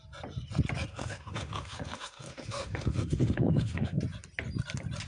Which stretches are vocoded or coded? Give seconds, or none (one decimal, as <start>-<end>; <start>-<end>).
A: 0.9-4.0

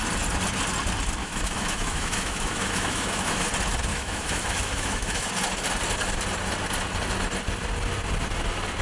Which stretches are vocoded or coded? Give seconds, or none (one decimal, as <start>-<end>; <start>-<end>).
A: 1.2-3.5; 3.9-5.3

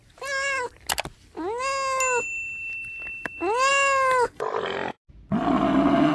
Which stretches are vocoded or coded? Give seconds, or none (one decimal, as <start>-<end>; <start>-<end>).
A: none

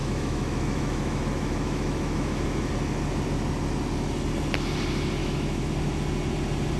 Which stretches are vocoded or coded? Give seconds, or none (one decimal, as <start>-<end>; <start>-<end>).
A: 0.0-2.7; 5.2-5.7